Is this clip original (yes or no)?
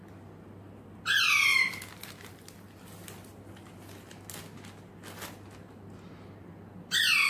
yes